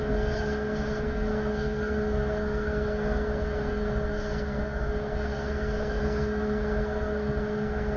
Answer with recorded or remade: remade